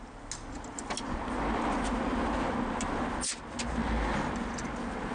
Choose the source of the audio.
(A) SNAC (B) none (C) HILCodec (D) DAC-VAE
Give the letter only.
B